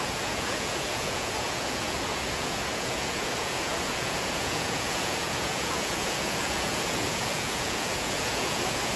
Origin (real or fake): fake